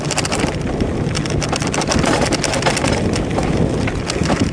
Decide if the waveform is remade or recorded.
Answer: recorded